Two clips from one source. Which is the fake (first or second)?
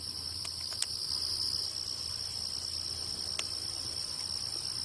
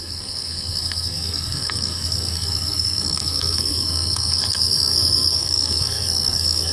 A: second